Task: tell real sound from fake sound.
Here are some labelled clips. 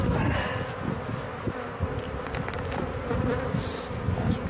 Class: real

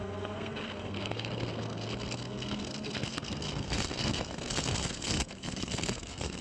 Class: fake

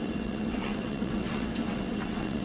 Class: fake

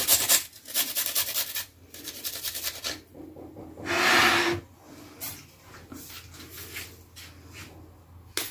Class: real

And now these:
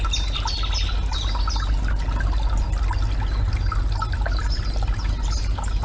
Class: real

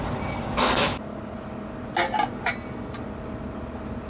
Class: real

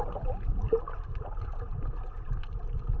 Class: real